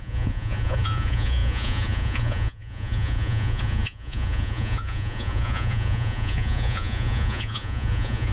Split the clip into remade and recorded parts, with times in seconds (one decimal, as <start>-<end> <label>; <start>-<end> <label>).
0.0-8.3 remade